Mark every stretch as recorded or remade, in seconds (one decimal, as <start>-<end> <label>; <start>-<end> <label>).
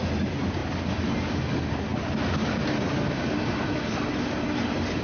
0.0-5.0 recorded